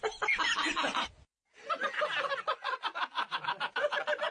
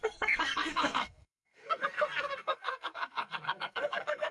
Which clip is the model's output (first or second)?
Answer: second